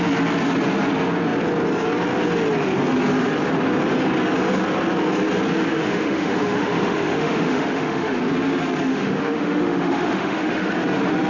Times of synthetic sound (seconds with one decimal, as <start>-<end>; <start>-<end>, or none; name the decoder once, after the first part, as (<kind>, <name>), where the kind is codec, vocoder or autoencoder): 5.7-8.2 (autoencoder, DAC-VAE); 8.9-10.7